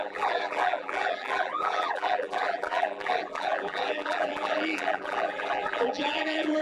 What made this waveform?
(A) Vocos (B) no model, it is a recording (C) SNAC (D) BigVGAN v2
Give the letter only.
D